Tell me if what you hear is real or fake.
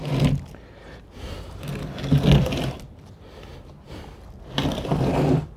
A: real